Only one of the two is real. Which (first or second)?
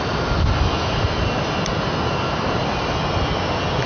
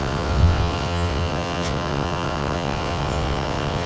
first